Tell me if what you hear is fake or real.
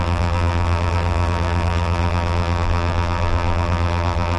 fake